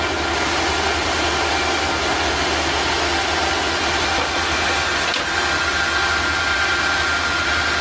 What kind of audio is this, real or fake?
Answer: real